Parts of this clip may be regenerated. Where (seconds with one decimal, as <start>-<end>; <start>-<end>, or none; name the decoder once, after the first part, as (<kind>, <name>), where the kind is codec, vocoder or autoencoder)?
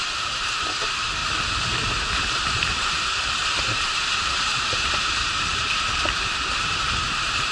0.0-1.2 (vocoder, BigVGAN v2); 2.1-7.5